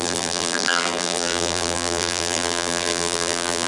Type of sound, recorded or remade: remade